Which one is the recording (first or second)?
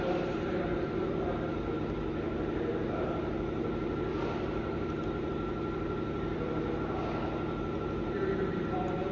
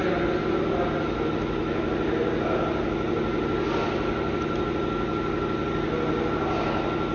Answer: second